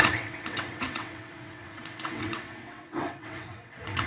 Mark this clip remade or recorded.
remade